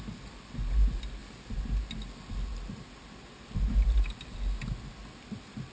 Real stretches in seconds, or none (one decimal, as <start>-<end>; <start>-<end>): 0.0-5.7